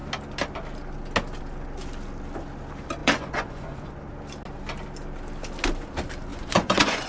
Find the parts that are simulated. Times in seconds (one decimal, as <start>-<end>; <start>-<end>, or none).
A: 3.0-3.9; 6.3-7.1